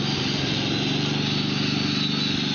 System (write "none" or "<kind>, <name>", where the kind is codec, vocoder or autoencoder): none